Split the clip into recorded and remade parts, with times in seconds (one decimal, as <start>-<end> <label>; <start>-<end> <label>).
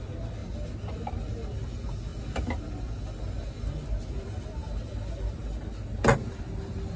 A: 0.0-7.0 recorded